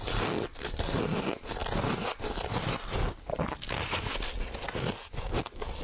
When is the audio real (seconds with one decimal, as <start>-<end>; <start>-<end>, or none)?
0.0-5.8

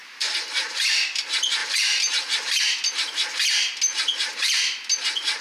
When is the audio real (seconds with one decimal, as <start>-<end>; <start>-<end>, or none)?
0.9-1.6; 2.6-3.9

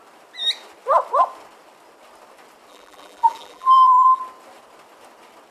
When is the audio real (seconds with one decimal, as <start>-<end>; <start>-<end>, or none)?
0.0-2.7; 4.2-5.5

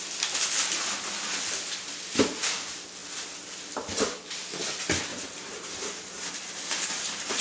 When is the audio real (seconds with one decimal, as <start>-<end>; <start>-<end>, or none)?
0.0-5.1